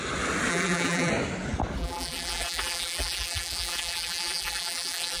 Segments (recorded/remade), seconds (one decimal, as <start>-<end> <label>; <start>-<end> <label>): 0.0-0.5 recorded; 0.5-1.1 remade; 1.1-1.8 recorded; 1.8-5.2 remade